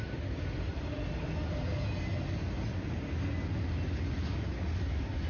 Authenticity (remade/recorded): recorded